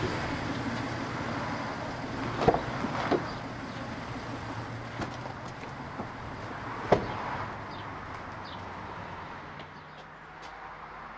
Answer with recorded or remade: recorded